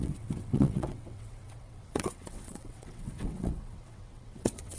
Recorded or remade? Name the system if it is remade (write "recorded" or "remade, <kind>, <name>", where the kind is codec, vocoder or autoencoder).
remade, vocoder, WaveNeXt